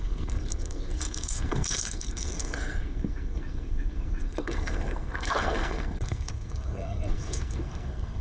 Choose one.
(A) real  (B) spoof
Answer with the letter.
B